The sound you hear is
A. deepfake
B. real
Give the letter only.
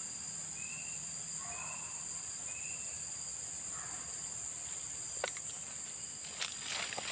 B